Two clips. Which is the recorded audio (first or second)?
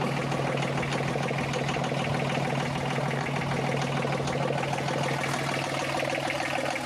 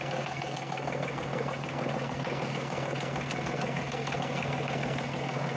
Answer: first